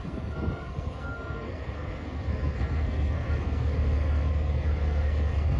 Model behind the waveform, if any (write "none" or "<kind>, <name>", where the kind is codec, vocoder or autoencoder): codec, SNAC